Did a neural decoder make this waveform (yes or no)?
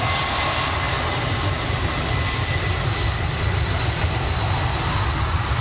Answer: no